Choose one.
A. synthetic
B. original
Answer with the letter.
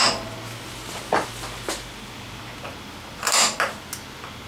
B